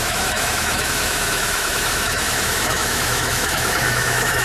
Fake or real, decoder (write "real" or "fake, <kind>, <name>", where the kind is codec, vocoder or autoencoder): fake, autoencoder, DAC-VAE